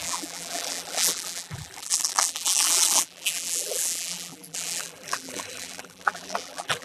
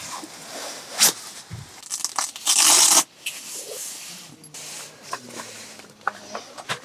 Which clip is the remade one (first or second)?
first